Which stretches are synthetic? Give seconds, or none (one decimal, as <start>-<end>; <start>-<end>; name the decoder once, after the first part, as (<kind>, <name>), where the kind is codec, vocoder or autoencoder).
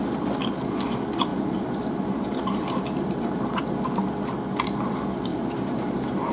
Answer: 1.3-3.6 (vocoder, BigVGAN v2); 5.3-6.3